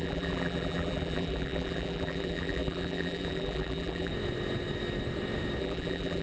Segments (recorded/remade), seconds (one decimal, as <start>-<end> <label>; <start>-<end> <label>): 0.0-4.1 remade; 4.1-5.6 recorded; 5.6-6.2 remade